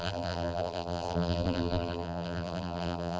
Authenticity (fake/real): fake